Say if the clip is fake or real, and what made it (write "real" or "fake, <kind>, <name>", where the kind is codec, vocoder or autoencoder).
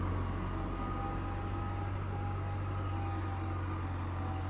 real